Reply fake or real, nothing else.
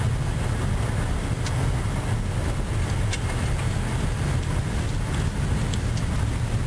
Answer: real